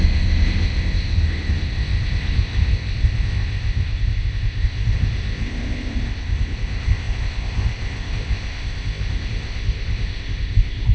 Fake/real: fake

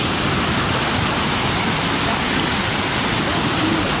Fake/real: real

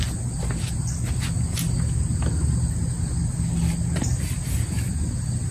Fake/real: real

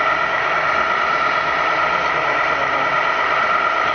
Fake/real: real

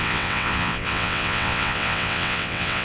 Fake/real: fake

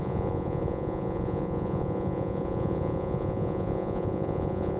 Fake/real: fake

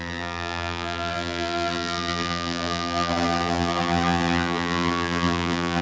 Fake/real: fake